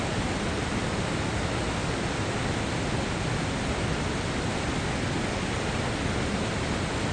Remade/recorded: recorded